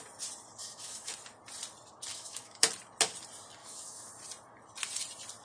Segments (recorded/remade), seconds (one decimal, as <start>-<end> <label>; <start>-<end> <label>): 0.0-0.6 recorded; 0.6-1.1 remade; 1.1-2.1 recorded; 2.1-2.6 remade; 2.6-3.6 recorded; 3.6-4.1 remade; 4.1-5.4 recorded